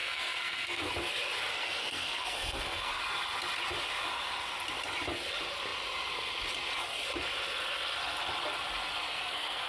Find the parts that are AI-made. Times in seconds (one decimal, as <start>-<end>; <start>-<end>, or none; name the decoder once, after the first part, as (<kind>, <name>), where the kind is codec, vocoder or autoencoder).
0.0-0.8 (codec, SNAC); 1.5-3.0; 9.1-9.7